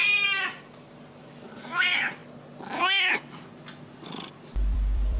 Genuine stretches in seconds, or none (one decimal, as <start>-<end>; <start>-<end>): 2.2-3.9